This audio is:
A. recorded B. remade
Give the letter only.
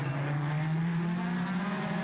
A